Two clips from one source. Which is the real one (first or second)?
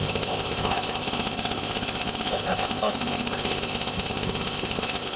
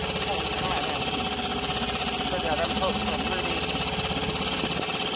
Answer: second